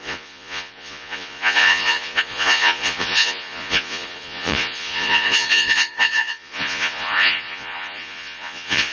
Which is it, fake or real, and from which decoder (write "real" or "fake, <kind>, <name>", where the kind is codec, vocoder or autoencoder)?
fake, vocoder, Vocos